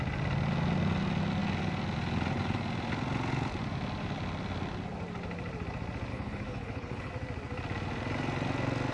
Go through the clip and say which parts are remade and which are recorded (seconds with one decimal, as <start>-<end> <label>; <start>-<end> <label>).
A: 0.0-6.1 recorded; 6.1-7.1 remade; 7.1-8.9 recorded